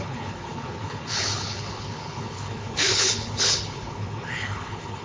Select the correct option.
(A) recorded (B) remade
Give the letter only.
B